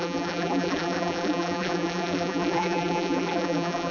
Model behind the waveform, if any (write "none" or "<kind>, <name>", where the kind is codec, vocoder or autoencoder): vocoder, BigVGAN v2